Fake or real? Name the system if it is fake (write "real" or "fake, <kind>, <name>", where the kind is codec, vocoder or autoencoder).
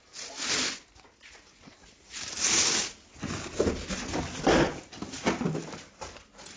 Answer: real